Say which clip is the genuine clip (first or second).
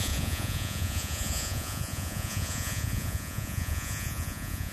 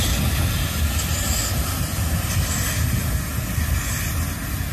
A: second